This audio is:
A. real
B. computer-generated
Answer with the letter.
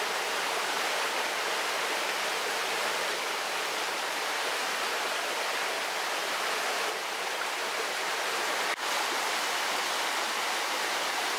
A